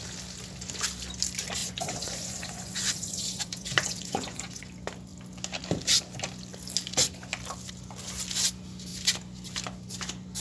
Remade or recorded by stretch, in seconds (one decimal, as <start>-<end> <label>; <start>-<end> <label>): 0.0-1.6 recorded; 1.6-4.6 remade; 4.6-10.4 recorded